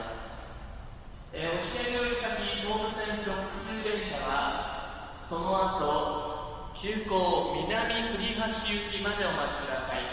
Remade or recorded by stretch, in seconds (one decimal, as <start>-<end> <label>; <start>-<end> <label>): 0.0-3.5 recorded; 3.5-4.0 remade; 4.0-10.1 recorded